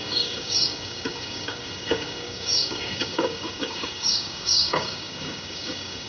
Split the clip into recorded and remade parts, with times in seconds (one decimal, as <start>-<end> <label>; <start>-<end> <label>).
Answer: 0.0-6.1 remade